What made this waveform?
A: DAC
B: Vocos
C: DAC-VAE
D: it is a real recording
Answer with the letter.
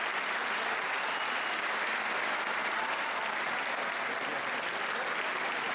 D